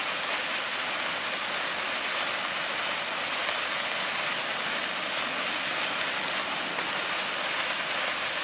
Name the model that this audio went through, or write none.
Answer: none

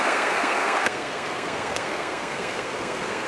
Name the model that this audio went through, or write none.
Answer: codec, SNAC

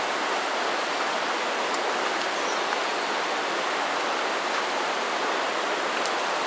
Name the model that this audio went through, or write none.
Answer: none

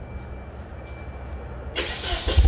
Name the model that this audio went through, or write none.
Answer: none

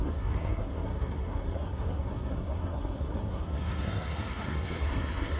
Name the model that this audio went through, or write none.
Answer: codec, SNAC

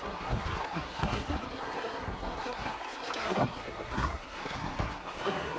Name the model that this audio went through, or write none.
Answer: codec, SNAC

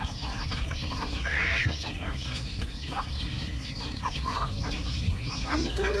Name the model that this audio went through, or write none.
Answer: codec, SNAC